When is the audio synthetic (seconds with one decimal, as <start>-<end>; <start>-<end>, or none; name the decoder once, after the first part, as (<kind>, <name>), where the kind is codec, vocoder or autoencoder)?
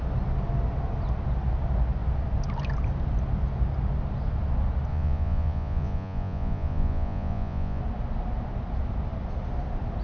4.9-7.8 (vocoder, Vocos)